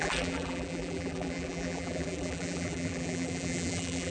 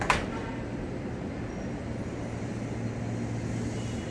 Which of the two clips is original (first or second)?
second